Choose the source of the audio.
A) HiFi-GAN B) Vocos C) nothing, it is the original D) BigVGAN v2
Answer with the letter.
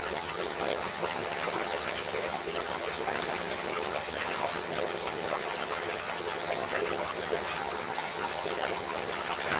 A